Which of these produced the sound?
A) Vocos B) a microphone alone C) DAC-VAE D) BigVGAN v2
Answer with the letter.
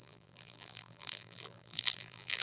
D